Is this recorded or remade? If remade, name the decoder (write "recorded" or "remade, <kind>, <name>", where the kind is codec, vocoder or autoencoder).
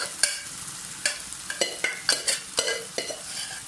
recorded